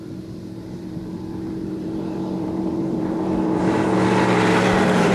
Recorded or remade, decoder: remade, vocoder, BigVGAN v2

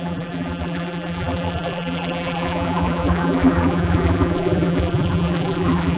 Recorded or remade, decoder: remade, vocoder, BigVGAN v2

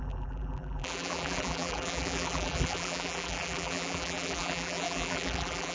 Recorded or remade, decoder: remade, vocoder, BigVGAN v2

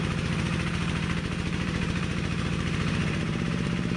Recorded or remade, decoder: remade, vocoder, BigVGAN v2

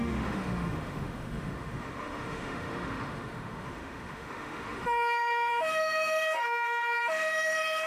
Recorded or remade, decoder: remade, autoencoder, DAC-VAE